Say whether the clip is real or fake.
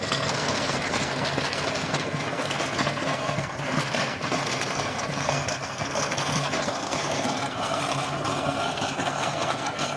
fake